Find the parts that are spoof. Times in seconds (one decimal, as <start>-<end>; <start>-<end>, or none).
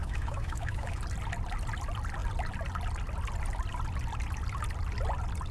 0.0-1.0